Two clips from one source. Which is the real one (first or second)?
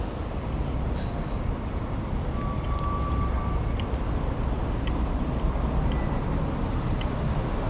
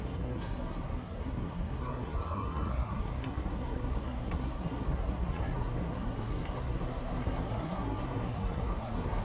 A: first